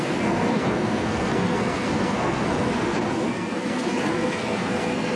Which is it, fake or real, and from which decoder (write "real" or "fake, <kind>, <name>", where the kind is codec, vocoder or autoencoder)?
fake, codec, SNAC